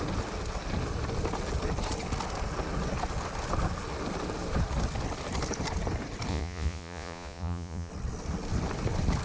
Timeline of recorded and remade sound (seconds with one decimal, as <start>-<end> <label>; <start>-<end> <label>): 0.0-6.3 recorded; 6.3-7.9 remade; 7.9-9.2 recorded